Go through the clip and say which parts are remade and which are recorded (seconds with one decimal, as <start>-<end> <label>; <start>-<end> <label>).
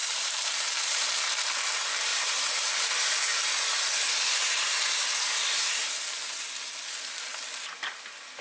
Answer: 0.0-1.1 remade; 1.1-8.4 recorded